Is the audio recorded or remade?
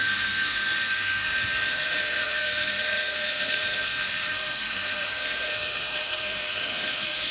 remade